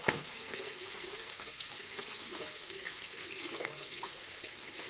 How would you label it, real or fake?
fake